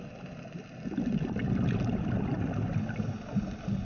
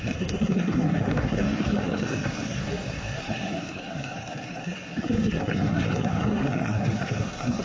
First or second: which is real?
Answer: first